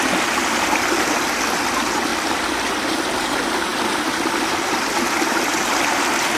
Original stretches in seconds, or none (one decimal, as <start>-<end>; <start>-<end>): 0.0-2.1; 2.7-6.4